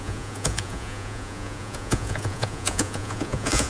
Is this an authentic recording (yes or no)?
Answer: no